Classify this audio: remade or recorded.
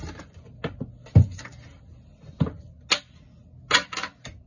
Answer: recorded